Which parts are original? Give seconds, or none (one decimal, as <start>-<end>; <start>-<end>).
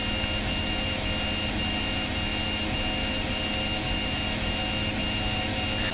0.0-5.9